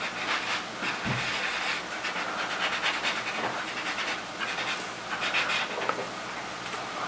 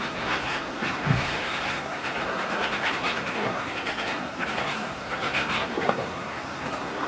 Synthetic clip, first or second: second